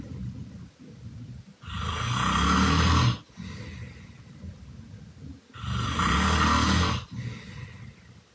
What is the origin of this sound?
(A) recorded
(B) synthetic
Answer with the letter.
A